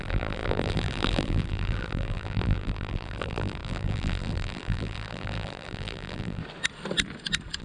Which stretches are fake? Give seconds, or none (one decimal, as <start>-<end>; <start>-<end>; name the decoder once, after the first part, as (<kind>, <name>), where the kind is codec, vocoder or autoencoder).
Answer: 0.0-6.4 (vocoder, BigVGAN v2)

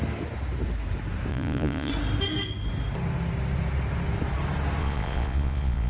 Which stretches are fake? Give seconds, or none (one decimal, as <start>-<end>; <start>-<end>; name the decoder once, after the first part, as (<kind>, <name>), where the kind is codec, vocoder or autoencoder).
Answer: 1.3-1.9 (vocoder, Vocos); 4.8-5.9

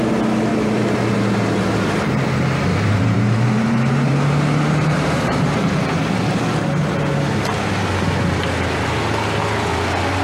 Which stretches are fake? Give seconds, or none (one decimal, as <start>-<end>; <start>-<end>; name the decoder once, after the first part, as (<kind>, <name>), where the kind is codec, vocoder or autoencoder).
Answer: 0.5-1.0 (vocoder, BigVGAN v2); 2.7-5.7